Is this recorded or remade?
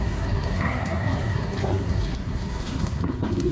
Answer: remade